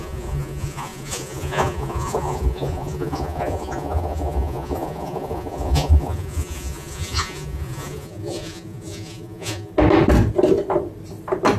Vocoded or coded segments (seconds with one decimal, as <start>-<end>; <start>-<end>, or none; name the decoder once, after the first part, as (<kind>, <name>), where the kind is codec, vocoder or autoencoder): 0.0-9.7 (vocoder, Vocos)